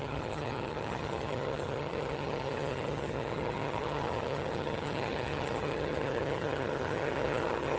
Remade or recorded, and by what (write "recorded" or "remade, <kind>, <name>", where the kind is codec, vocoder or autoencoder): remade, vocoder, HiFi-GAN